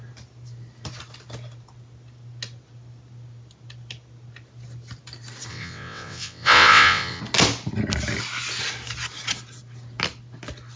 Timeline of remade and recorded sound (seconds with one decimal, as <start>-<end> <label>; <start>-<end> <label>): 0.0-5.5 recorded; 5.5-7.2 remade; 7.2-10.8 recorded